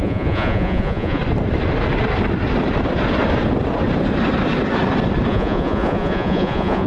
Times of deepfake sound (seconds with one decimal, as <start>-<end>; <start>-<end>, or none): 0.0-1.2; 5.3-6.9